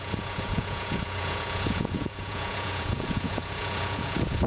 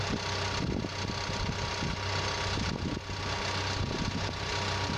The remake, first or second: first